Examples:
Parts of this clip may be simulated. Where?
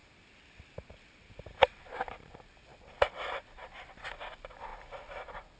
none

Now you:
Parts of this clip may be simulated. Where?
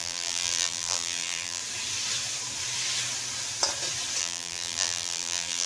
0.0-1.6 (vocoder, BigVGAN v2); 4.2-5.7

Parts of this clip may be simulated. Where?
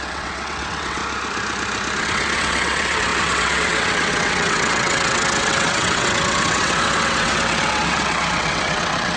0.0-1.0 (vocoder, WaveNeXt); 2.0-9.2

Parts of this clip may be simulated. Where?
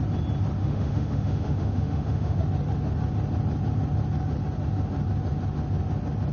0.6-2.4 (autoencoder, DAC-VAE)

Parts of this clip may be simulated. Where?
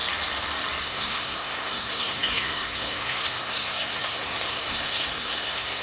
0.8-5.8 (codec, SNAC)